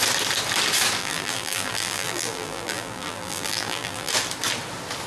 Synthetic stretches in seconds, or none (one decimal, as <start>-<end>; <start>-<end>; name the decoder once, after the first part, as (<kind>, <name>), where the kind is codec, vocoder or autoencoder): 1.0-4.1 (vocoder, BigVGAN v2)